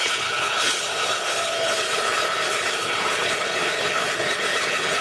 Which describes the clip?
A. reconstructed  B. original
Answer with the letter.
A